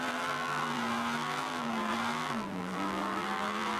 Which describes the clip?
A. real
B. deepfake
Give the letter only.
B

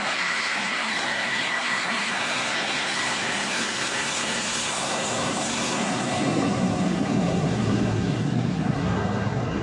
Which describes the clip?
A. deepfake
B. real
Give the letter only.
A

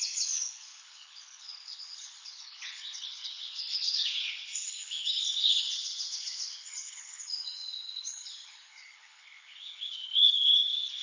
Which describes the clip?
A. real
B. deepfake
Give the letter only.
B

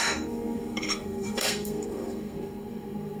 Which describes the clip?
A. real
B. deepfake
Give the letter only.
B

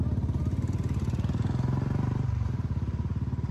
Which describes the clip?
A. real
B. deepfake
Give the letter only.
A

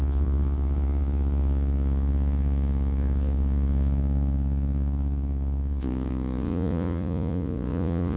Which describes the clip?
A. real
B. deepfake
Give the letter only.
B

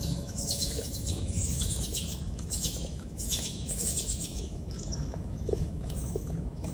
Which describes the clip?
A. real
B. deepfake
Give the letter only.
B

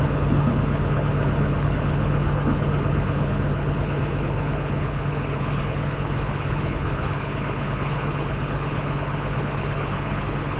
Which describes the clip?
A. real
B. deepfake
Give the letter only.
B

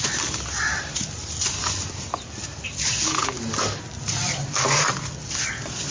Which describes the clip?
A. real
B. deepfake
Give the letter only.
A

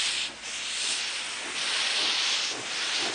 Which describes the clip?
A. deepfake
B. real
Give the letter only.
B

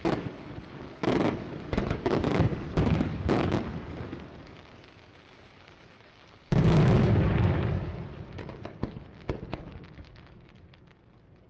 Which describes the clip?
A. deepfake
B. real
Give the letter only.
A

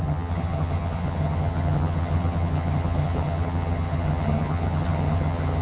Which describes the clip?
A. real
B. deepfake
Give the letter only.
B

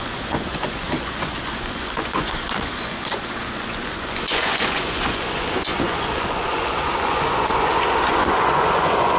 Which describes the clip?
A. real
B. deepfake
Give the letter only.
B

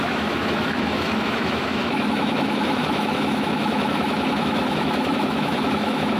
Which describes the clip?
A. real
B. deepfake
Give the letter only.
B